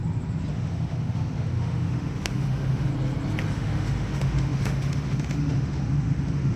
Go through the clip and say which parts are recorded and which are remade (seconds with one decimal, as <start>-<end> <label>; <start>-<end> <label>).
0.0-0.5 recorded; 0.5-2.9 remade; 2.9-3.5 recorded; 3.5-6.6 remade